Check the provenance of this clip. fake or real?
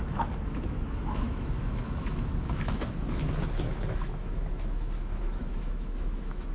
fake